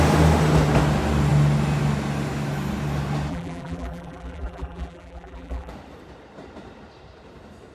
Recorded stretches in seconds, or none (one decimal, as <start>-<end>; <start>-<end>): 0.0-3.3; 5.7-7.7